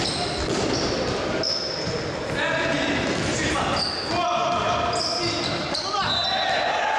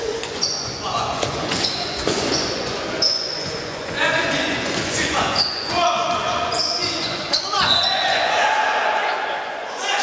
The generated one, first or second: second